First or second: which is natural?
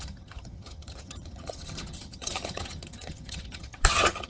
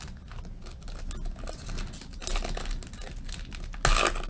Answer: second